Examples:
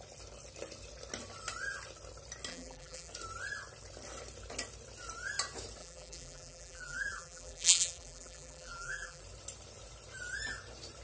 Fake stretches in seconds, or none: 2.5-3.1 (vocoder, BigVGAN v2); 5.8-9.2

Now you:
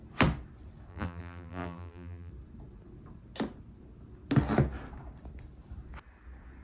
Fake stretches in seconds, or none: 0.9-2.3 (vocoder, BigVGAN v2)

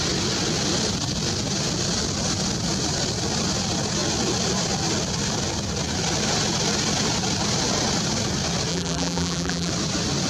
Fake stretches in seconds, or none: 8.7-9.7 (vocoder, BigVGAN v2)

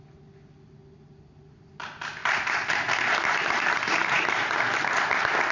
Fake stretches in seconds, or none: 2.2-4.9 (vocoder, BigVGAN v2)

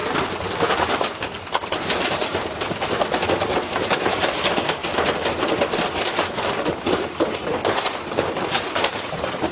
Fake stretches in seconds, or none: 0.7-4.8 (vocoder, BigVGAN v2); 6.5-7.6; 8.5-9.5

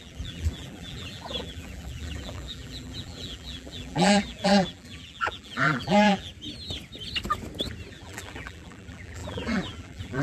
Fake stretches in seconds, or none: 0.0-6.3 (vocoder, BigVGAN v2); 7.9-10.2

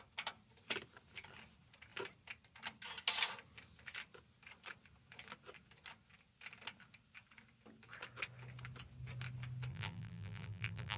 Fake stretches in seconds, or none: 9.7-11.0 (vocoder, BigVGAN v2)

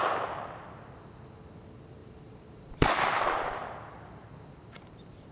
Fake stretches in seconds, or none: 2.0-3.7 (vocoder, BigVGAN v2)